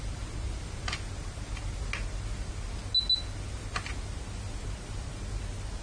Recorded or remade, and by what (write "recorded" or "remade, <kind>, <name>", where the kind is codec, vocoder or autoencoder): recorded